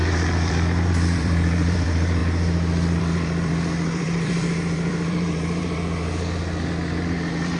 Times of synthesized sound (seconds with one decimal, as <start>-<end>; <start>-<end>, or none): 0.0-2.2; 3.0-7.6